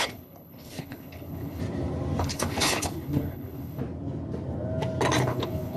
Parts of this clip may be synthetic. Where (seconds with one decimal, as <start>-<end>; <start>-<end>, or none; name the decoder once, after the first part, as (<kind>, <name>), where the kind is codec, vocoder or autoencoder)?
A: 0.0-1.6 (codec, HILCodec); 2.2-3.8; 5.2-5.8